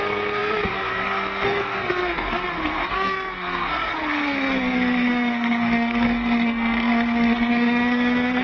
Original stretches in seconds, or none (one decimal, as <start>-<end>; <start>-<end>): none